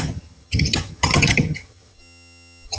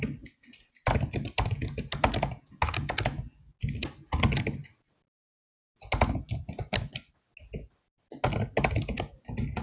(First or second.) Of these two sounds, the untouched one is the second